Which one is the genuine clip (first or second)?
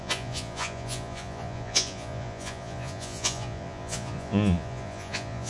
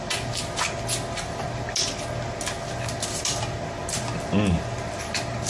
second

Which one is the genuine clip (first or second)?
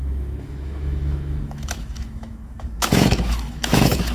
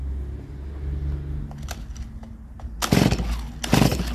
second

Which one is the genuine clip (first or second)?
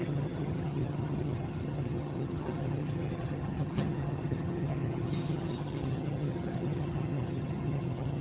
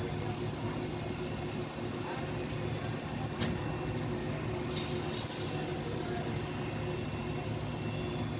second